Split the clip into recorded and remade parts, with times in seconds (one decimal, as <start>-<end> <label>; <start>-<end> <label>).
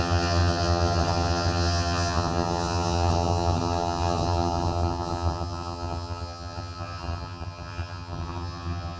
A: 0.0-9.0 remade